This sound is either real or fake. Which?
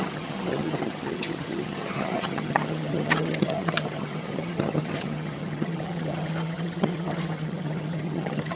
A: fake